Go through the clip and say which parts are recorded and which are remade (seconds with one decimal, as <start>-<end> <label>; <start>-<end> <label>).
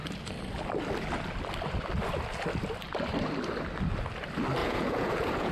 0.0-4.6 recorded; 4.6-5.5 remade